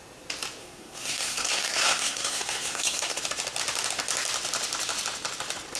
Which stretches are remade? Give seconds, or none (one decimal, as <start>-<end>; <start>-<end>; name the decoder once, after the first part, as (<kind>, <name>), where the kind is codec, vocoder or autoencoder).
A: 0.6-3.2 (codec, SNAC)